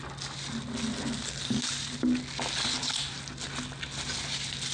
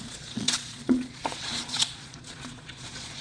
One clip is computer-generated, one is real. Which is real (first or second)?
first